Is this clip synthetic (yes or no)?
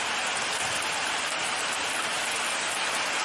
no